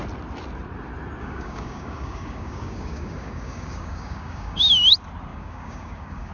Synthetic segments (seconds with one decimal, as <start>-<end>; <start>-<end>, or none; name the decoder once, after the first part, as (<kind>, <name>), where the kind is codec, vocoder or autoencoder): 1.2-4.6 (codec, DAC); 5.3-6.3